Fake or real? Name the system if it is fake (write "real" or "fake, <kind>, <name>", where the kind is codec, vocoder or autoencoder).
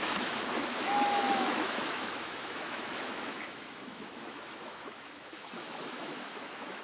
fake, autoencoder, DAC-VAE